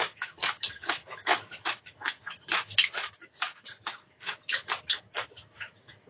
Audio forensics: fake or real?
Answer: fake